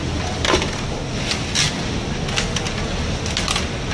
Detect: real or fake real